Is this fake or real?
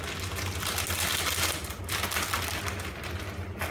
real